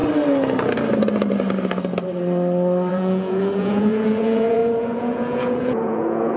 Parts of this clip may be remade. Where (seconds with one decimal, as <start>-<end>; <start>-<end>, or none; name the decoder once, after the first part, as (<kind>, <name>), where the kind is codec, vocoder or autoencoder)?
2.9-6.4 (vocoder, Vocos)